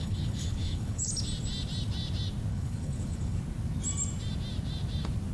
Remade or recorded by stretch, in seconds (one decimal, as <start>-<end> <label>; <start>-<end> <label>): 0.0-1.1 remade; 1.1-2.5 recorded; 2.5-3.4 remade; 3.4-5.3 recorded